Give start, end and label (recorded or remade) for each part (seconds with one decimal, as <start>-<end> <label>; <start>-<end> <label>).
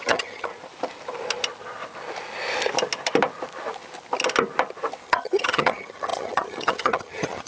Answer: 0.0-0.5 remade; 0.5-5.0 recorded; 5.0-7.5 remade